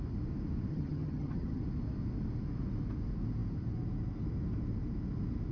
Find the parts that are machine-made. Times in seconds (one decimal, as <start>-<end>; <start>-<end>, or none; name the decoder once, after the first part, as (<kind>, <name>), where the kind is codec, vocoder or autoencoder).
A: 0.7-1.6 (vocoder, HiFi-GAN)